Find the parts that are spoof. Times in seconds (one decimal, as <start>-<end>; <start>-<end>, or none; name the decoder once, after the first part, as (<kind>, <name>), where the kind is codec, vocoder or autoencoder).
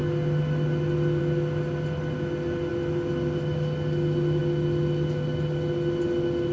none